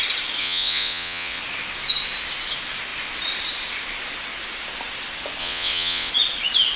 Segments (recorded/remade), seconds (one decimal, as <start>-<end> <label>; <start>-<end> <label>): 0.0-0.4 recorded; 0.4-1.4 remade; 1.4-5.4 recorded; 5.4-6.1 remade; 6.1-6.8 recorded